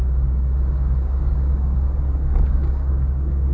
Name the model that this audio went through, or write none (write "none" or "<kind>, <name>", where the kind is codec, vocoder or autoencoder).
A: codec, DAC